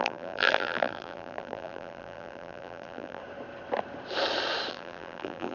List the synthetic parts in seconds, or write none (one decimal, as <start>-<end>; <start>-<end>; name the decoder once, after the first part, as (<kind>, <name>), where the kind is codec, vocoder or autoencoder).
0.0-3.2 (vocoder, BigVGAN v2); 4.7-5.5